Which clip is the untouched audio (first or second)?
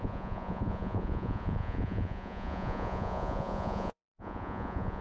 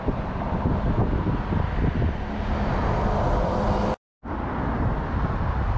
second